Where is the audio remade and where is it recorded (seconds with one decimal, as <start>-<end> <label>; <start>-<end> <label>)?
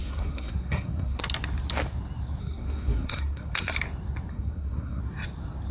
0.0-1.2 remade; 1.2-2.4 recorded; 2.4-3.7 remade; 3.7-4.3 recorded; 4.3-5.0 remade; 5.0-5.7 recorded